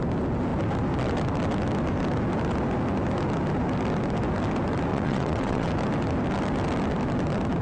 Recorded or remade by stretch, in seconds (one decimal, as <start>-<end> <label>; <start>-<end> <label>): 0.0-4.9 recorded; 4.9-5.7 remade; 5.7-7.6 recorded